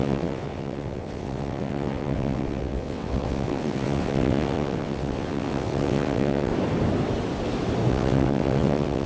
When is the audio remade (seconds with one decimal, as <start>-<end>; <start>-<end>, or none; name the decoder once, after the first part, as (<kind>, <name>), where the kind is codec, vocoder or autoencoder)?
0.0-6.5 (vocoder, WaveNeXt); 7.9-9.1